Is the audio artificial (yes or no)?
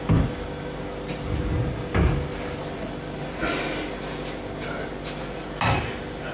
no